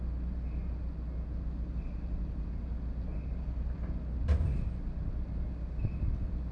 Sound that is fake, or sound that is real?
real